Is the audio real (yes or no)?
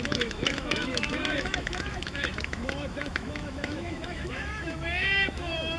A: no